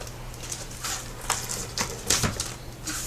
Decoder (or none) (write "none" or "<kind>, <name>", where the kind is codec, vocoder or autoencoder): none